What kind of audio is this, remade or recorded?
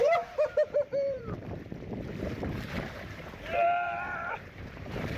remade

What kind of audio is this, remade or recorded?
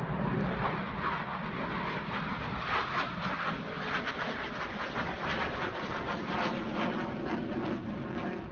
recorded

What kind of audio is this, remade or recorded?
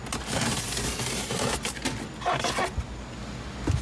recorded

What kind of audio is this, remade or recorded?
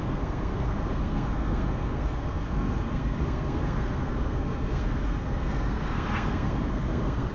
remade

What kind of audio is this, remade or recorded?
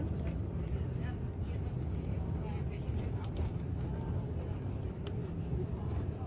recorded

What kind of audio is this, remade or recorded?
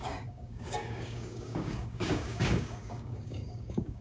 remade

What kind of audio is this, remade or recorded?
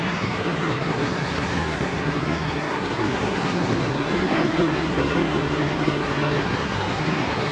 remade